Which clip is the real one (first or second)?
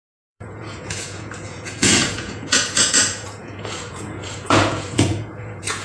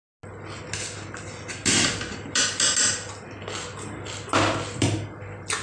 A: second